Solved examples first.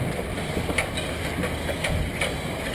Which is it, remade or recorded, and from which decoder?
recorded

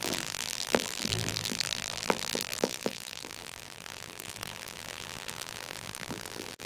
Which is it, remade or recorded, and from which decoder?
remade, vocoder, BigVGAN v2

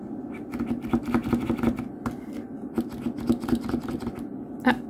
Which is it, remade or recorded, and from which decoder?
recorded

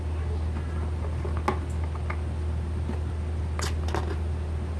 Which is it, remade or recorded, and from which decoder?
recorded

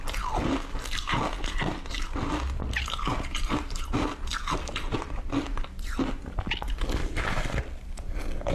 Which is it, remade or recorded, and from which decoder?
recorded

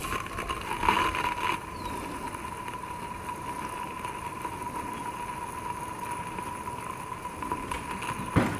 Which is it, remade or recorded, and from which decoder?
recorded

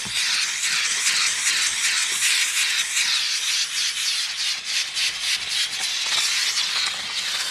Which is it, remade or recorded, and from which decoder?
recorded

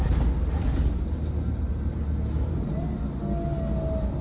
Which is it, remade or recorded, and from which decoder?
recorded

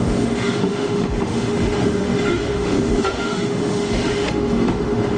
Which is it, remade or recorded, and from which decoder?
remade, autoencoder, DAC-VAE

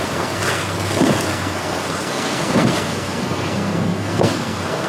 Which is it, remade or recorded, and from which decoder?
remade, codec, SNAC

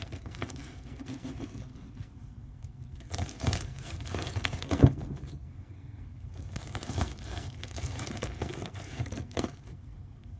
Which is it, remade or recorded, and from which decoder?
remade, codec, SNAC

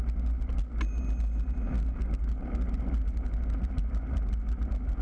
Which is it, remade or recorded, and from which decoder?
recorded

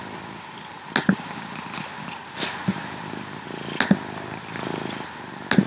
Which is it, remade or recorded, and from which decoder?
recorded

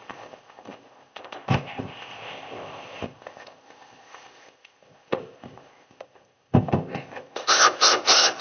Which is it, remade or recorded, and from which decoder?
remade, codec, ZipCodec